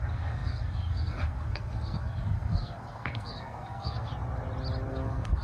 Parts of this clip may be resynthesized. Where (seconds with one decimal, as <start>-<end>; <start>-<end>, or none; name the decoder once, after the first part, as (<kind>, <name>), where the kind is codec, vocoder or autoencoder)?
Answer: 0.0-4.1 (codec, SNAC); 4.9-5.4